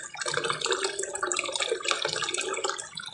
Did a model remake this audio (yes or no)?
no